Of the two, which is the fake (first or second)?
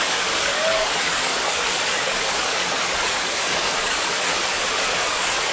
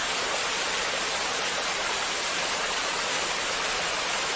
first